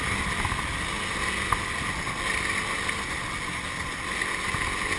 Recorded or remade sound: recorded